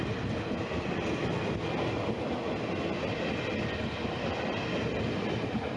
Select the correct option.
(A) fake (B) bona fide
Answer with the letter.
B